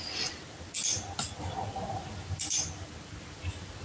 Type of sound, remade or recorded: recorded